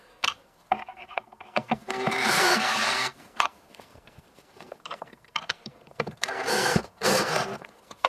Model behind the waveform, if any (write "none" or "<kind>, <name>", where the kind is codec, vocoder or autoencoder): codec, SNAC